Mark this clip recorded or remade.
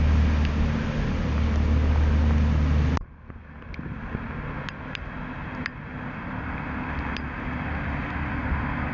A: recorded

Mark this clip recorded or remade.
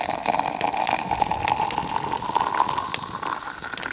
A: recorded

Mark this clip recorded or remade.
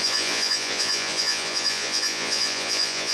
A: remade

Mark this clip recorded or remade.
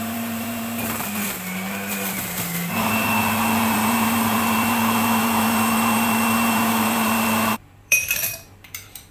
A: remade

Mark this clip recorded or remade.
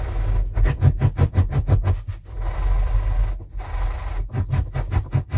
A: recorded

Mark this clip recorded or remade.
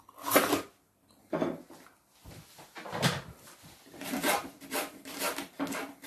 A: recorded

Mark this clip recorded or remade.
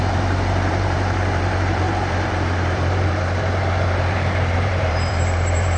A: remade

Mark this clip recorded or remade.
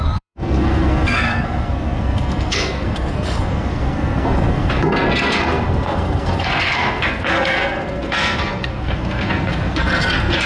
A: remade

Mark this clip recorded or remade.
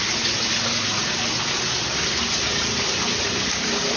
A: recorded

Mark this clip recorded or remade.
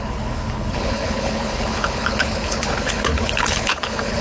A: remade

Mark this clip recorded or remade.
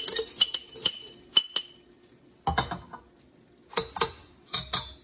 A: recorded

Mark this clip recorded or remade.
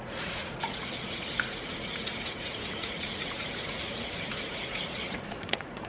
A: remade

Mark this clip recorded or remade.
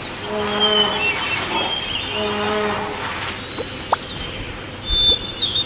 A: recorded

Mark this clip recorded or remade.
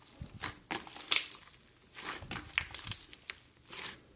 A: recorded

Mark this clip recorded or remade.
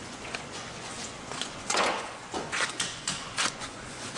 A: remade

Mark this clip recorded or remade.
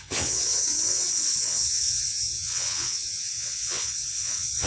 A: remade